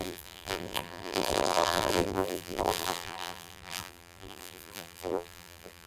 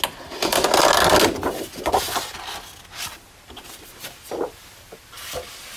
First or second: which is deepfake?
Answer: first